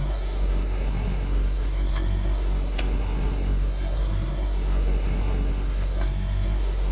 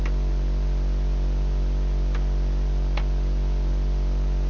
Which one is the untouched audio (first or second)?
second